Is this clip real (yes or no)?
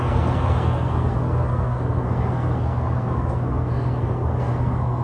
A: no